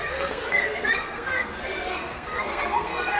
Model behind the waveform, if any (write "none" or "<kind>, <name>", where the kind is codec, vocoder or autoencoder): codec, SNAC